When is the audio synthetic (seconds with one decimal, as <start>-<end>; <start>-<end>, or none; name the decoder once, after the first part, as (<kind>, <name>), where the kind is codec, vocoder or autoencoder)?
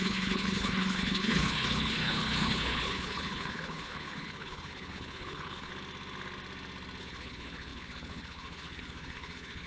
0.0-5.7 (codec, HILCodec); 7.0-9.7